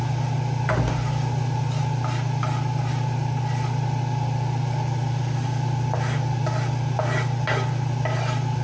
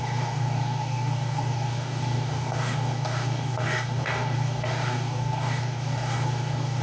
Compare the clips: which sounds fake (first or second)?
second